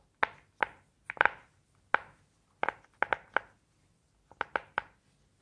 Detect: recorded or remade recorded